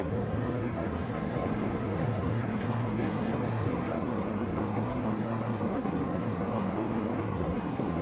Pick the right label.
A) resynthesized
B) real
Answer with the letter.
A